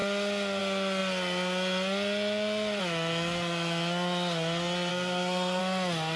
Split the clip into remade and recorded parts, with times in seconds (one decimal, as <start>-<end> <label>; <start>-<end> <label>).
0.0-4.9 recorded; 4.9-5.6 remade; 5.6-6.2 recorded